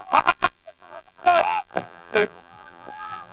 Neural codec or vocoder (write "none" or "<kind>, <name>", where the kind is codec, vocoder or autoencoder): vocoder, BigVGAN v2